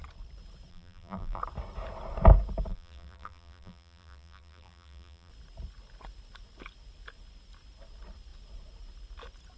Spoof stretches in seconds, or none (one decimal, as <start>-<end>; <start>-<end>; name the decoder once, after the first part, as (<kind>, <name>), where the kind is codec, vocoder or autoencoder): 0.7-1.4 (vocoder, BigVGAN v2); 2.7-5.3